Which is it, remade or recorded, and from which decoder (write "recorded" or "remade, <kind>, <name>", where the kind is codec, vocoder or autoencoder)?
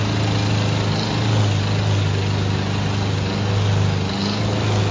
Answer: recorded